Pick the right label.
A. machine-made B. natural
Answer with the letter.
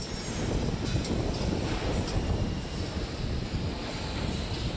B